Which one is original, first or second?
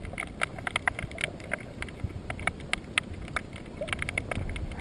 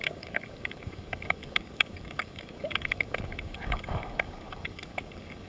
first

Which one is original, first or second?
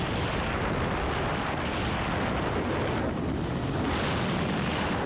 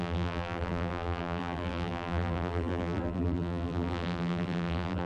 first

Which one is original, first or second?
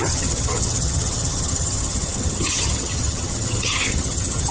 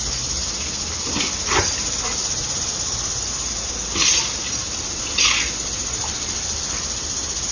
second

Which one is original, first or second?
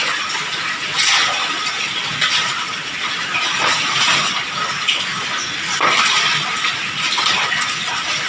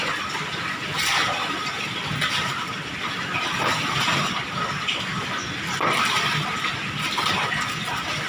first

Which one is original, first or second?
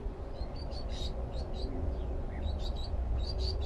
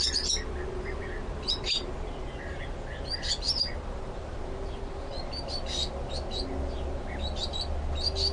second